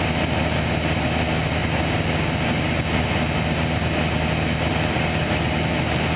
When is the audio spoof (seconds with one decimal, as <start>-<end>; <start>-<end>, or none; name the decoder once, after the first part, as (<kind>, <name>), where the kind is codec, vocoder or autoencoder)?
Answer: none